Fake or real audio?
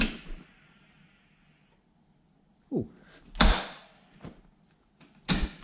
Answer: real